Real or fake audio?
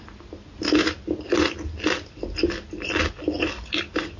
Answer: real